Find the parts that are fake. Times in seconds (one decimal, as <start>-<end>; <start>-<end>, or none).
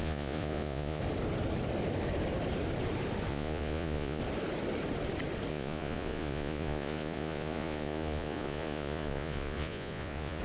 0.0-1.0; 3.3-4.2; 5.5-10.4